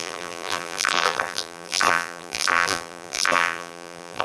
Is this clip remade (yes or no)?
yes